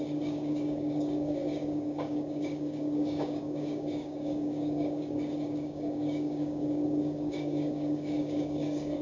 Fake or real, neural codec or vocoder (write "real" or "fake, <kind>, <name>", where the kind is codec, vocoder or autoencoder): fake, codec, DAC